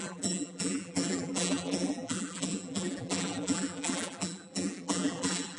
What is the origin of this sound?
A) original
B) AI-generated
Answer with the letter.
B